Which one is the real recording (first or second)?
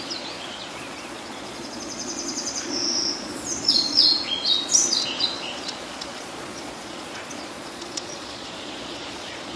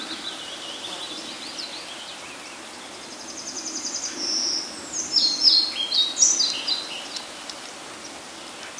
second